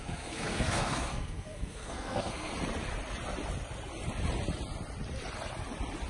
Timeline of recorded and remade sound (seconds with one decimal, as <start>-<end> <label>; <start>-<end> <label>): 0.0-2.5 remade; 2.5-6.1 recorded